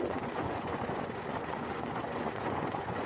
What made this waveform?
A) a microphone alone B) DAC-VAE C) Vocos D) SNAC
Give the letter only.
C